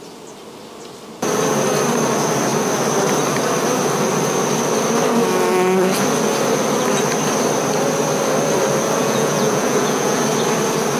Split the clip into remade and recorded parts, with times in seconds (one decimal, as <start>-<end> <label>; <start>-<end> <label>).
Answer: 0.0-9.0 recorded; 9.0-10.2 remade; 10.2-11.0 recorded